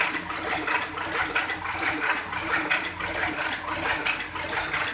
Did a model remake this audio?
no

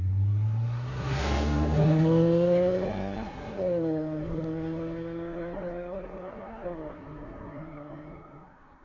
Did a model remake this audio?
yes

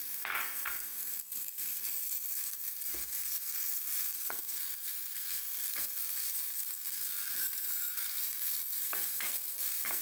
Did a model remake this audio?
yes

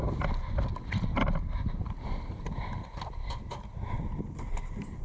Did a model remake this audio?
no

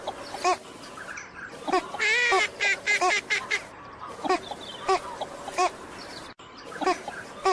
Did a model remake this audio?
no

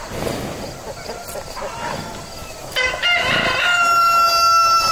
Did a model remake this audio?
no